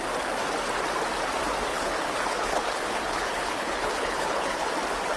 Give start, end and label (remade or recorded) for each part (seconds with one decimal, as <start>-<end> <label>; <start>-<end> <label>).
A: 0.0-1.7 recorded; 1.7-4.7 remade; 4.7-5.2 recorded